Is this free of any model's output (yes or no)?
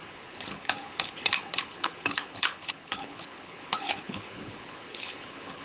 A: no